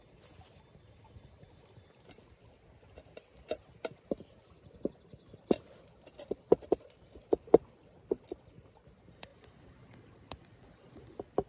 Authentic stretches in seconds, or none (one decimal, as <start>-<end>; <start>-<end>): 0.0-11.5